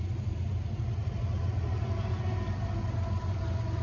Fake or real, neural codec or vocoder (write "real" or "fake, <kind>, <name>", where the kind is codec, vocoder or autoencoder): fake, vocoder, BigVGAN v2